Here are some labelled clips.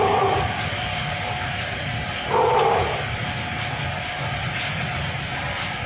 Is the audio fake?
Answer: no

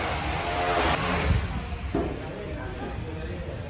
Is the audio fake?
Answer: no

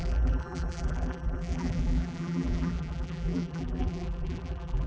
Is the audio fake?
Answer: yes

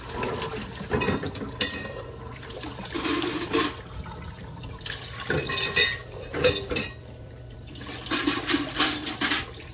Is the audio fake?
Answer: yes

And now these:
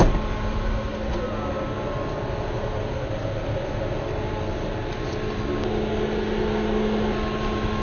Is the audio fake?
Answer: no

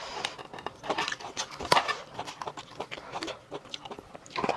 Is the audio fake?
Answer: no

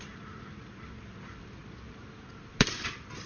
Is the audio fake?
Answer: yes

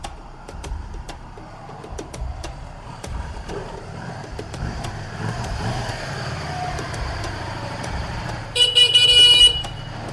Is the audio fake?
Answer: yes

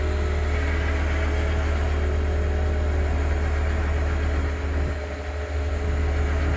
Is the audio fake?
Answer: no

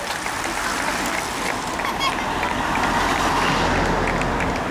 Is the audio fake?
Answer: no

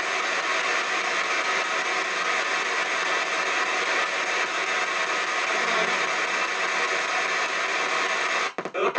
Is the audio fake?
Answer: no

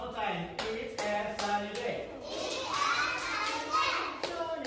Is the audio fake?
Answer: no